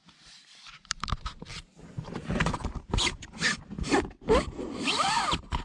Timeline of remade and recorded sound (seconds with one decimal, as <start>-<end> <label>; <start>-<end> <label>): 0.0-5.6 remade